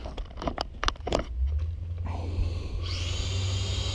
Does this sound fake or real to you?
real